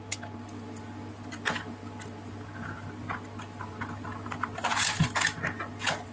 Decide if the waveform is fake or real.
real